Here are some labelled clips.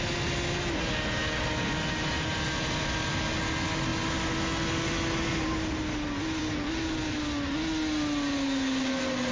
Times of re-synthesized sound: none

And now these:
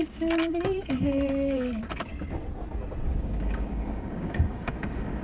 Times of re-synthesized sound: 0.0-2.1 (codec, DAC); 3.2-5.2

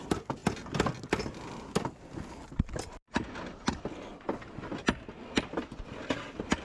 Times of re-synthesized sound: none

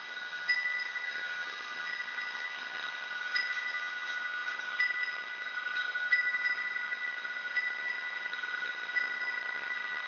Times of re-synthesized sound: 0.0-10.1 (vocoder, HiFi-GAN)

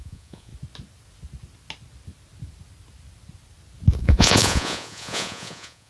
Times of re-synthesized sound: 0.0-0.5 (vocoder, Vocos); 4.0-5.9

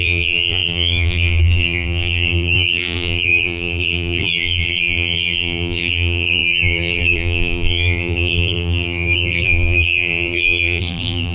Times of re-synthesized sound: 0.0-11.3 (vocoder, BigVGAN v2)

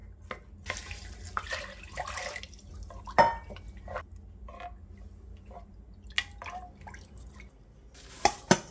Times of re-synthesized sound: none